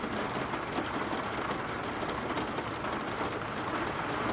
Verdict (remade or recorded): recorded